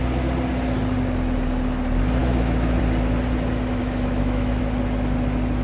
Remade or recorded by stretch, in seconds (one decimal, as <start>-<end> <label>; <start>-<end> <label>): 0.0-2.2 recorded; 2.2-2.8 remade; 2.8-3.8 recorded; 3.8-4.6 remade; 4.6-5.6 recorded